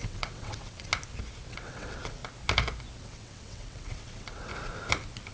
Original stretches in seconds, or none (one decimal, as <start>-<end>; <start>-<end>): 0.9-1.5; 2.2-3.0; 4.5-5.3